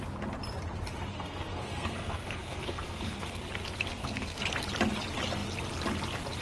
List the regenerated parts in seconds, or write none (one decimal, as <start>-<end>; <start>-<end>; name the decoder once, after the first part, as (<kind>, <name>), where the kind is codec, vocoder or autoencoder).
1.1-3.4 (codec, SNAC); 3.9-4.4